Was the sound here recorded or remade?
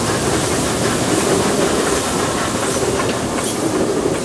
recorded